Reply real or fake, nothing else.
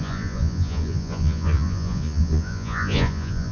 fake